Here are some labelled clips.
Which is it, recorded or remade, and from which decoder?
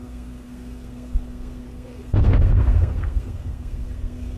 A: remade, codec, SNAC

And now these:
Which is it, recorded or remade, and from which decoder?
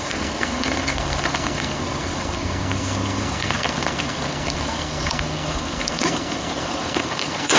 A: remade, codec, SNAC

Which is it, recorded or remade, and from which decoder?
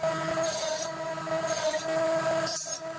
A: recorded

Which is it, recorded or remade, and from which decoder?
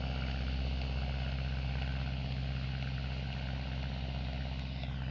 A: recorded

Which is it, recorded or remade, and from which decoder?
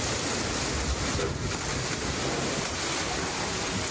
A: recorded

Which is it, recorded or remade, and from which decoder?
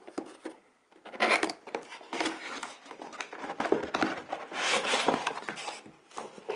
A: recorded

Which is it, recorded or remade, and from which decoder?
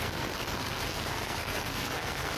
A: remade, codec, SNAC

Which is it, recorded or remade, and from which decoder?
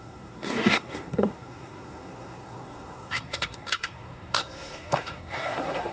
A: remade, codec, SNAC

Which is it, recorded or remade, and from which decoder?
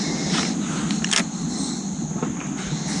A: recorded